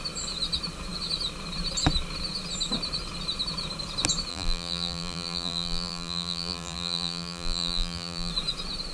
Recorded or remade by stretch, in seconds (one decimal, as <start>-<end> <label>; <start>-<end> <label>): 0.0-4.3 recorded; 4.3-8.3 remade; 8.3-8.9 recorded